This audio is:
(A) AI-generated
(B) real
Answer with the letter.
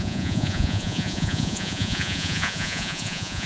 A